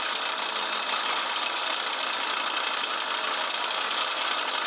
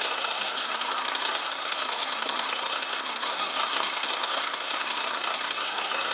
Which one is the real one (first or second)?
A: first